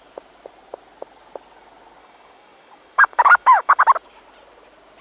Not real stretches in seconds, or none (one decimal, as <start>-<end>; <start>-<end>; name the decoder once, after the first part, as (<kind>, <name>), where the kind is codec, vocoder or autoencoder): 2.0-3.8 (codec, DAC)